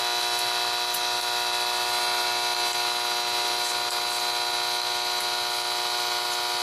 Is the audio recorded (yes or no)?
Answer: yes